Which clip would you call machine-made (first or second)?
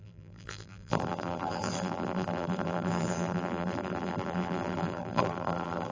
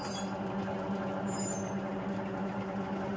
first